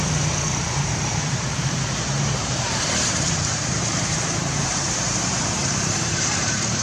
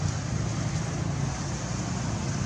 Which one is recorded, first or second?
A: second